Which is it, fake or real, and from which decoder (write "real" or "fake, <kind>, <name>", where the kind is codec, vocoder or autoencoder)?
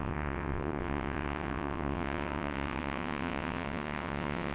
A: fake, vocoder, WaveNeXt